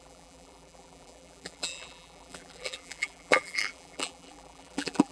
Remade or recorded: remade